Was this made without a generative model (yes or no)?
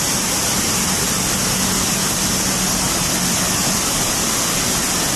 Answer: yes